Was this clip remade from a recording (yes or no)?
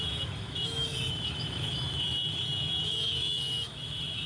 yes